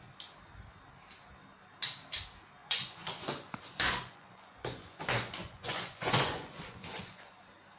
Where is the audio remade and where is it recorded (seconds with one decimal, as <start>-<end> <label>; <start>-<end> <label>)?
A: 0.0-2.6 recorded; 2.6-7.3 remade; 7.3-7.8 recorded